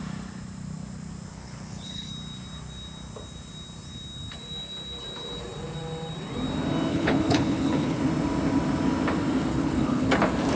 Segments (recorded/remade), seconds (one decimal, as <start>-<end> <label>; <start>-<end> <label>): 0.0-1.3 recorded; 1.3-2.1 remade; 2.1-6.9 recorded; 6.9-8.0 remade; 8.0-9.5 recorded; 9.5-10.1 remade; 10.1-10.6 recorded